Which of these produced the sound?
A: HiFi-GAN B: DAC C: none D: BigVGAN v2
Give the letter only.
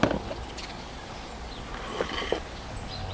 C